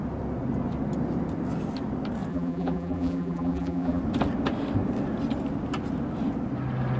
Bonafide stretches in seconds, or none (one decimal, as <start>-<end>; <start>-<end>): 0.0-2.3; 4.0-7.0

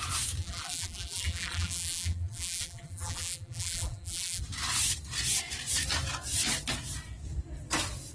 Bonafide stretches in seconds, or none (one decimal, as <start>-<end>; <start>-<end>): 0.0-0.4; 4.4-8.1

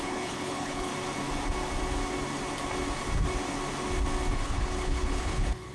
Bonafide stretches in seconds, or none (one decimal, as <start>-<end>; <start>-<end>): 0.9-4.3

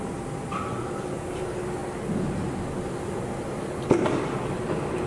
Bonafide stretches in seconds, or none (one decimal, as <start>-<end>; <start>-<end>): 0.0-5.1